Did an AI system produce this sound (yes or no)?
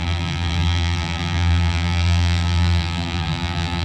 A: yes